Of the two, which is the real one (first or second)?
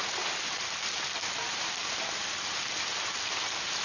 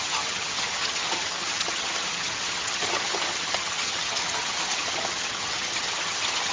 first